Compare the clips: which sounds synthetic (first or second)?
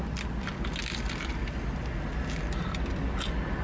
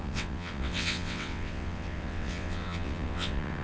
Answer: second